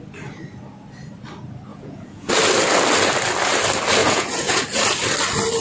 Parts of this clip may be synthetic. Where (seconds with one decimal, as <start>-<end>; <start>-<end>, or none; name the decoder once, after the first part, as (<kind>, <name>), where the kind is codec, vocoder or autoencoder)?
1.7-2.3 (vocoder, Vocos); 4.0-4.6